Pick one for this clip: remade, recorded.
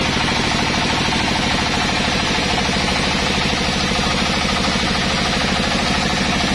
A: recorded